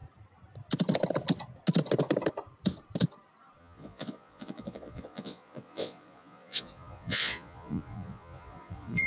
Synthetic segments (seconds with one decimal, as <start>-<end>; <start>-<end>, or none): 3.6-9.1